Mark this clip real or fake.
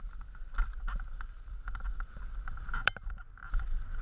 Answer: fake